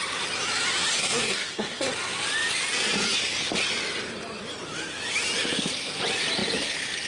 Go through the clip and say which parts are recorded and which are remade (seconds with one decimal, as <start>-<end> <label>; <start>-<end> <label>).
0.0-0.9 recorded; 0.9-1.9 remade; 1.9-7.1 recorded